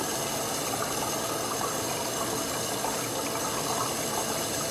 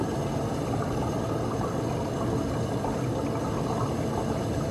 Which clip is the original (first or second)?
first